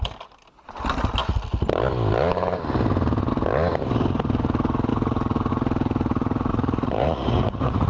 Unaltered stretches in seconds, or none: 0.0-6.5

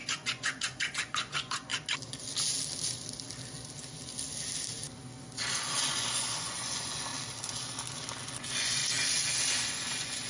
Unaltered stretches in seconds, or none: 1.7-5.5; 7.1-8.4; 8.8-9.5